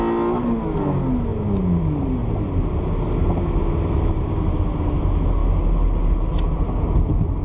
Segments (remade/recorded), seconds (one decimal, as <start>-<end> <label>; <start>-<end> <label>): 0.0-7.4 recorded